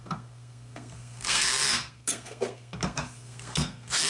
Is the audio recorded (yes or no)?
no